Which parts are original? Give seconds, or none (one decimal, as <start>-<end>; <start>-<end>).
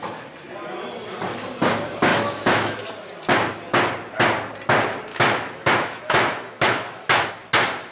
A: 0.0-2.1; 2.8-5.1; 7.3-7.9